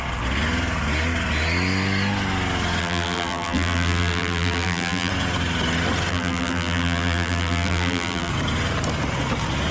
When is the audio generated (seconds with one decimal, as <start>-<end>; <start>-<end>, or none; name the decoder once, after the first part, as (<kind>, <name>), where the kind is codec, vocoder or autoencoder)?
2.8-5.1 (vocoder, BigVGAN v2); 6.1-8.3